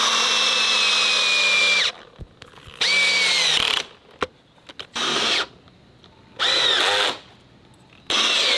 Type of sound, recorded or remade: recorded